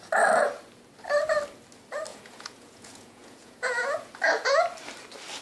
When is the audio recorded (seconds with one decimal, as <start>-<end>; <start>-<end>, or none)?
0.0-2.1; 4.1-5.4